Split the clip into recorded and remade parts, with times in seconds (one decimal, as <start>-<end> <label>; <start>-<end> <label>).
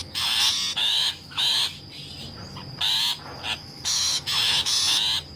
0.0-0.8 recorded; 0.8-1.8 remade; 1.8-3.6 recorded; 3.6-4.8 remade; 4.8-5.4 recorded